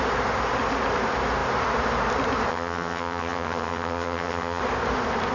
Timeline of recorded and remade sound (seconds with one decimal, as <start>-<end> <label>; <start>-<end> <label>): 0.0-2.5 recorded; 2.5-4.6 remade; 4.6-5.3 recorded